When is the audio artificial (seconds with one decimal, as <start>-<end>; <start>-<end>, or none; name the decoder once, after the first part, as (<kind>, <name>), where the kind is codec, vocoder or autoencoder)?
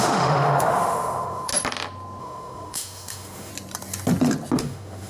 0.0-1.5 (autoencoder, DAC-VAE); 2.2-3.5; 4.6-5.1